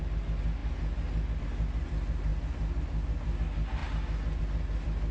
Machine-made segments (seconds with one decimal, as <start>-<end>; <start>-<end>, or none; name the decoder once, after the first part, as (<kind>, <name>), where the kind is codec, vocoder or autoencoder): none